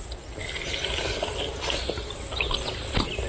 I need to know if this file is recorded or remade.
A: recorded